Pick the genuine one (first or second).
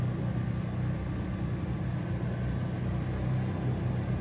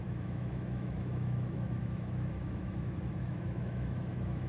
first